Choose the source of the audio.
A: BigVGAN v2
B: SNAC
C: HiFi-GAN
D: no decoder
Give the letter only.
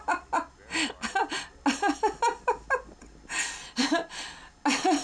D